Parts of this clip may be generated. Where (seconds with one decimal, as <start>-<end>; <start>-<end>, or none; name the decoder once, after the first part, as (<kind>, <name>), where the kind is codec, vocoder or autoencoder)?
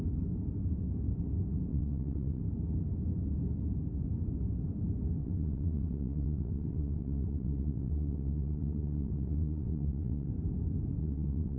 1.7-2.4 (vocoder, WaveNeXt); 5.2-10.3; 11.0-11.6